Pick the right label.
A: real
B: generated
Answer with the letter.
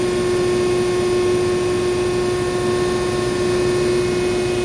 A